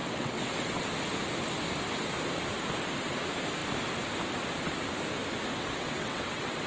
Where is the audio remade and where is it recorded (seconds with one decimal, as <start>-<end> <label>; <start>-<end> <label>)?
0.0-0.8 remade; 0.8-5.5 recorded; 5.5-6.7 remade